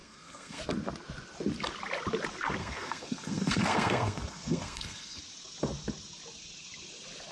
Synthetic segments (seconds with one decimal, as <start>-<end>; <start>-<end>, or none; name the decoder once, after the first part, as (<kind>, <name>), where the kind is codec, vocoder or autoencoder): 0.0-0.6 (codec, SNAC); 2.6-5.2

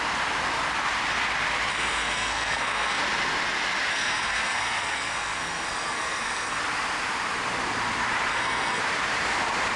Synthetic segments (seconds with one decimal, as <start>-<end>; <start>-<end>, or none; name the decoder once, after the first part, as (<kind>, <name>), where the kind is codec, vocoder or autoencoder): 1.7-3.0 (codec, SNAC); 3.9-6.6; 8.3-8.8